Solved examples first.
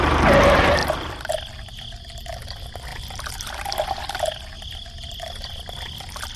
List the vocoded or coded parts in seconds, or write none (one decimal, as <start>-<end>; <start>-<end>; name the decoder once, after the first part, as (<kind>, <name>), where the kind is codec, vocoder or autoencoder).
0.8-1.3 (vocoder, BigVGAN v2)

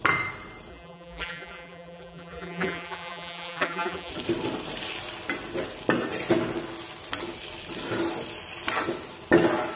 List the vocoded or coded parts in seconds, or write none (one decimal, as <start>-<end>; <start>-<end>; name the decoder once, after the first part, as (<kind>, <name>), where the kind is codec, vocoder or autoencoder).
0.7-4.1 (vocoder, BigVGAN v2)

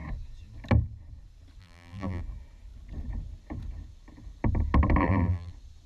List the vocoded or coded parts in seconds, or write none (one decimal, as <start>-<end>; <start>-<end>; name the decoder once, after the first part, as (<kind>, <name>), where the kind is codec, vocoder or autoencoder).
1.6-2.2 (vocoder, BigVGAN v2); 5.0-5.5

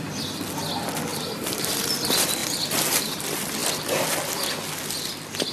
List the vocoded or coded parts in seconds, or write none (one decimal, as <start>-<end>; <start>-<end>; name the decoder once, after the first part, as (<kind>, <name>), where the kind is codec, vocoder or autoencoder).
1.1-1.7 (vocoder, BigVGAN v2); 2.4-3.2

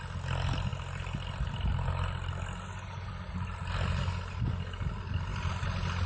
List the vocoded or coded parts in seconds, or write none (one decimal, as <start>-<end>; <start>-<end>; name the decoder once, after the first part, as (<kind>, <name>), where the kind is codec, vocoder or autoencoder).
none

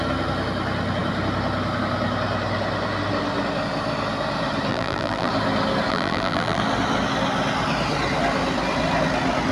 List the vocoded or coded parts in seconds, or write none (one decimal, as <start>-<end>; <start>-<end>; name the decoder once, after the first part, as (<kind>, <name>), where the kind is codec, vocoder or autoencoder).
4.7-5.3 (vocoder, BigVGAN v2); 5.9-6.6

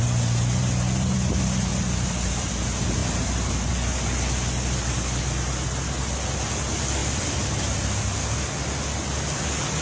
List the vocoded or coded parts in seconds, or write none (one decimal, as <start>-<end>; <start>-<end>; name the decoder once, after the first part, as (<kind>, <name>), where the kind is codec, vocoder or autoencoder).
3.0-3.7 (vocoder, BigVGAN v2); 7.0-8.2